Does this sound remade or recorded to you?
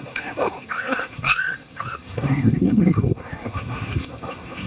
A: remade